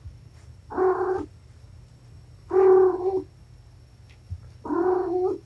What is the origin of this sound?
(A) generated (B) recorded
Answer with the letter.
B